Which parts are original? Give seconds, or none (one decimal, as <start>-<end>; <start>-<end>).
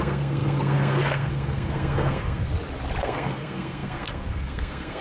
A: 2.5-3.0